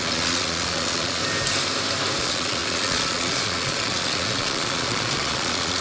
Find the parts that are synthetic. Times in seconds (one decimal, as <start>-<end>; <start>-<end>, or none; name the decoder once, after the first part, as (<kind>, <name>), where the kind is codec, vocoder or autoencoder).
0.0-1.2 (vocoder, Vocos); 2.2-5.8